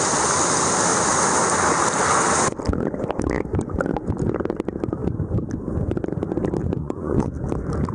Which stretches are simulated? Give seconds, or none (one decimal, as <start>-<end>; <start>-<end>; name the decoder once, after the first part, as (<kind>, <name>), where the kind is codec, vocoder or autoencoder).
6.6-7.3 (vocoder, Vocos)